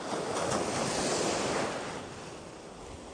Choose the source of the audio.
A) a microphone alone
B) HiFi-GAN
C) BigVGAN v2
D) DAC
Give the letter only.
A